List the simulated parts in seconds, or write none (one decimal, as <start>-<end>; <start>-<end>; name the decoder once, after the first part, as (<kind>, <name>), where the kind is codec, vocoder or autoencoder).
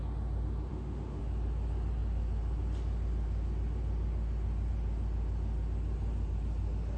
0.7-1.2 (autoencoder, DAC-VAE)